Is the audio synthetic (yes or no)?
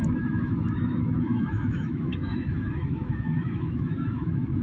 yes